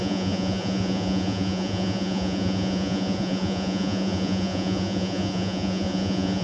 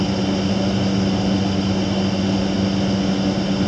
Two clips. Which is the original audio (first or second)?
second